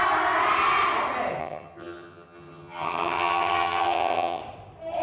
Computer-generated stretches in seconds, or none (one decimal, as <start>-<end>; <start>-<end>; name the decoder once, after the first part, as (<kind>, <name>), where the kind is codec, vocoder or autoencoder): 1.4-4.4 (vocoder, HiFi-GAN)